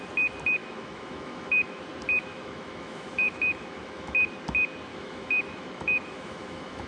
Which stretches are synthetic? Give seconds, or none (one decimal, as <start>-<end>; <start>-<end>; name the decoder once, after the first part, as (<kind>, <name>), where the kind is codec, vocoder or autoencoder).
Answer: 0.6-1.8 (autoencoder, DAC-VAE); 2.3-4.3; 4.9-6.9